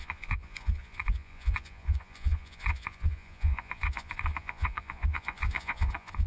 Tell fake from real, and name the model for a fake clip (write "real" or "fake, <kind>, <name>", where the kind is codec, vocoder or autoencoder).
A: fake, vocoder, Vocos